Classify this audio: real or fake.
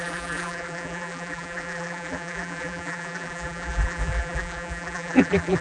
fake